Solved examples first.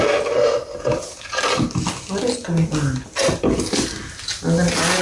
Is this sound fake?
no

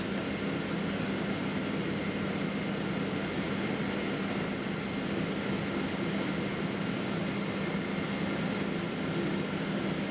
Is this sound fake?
no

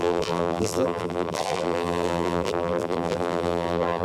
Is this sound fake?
yes